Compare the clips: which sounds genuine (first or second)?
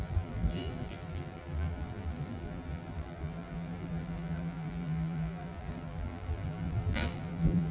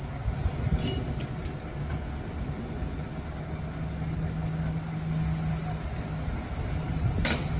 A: second